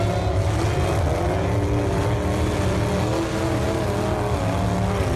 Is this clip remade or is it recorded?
recorded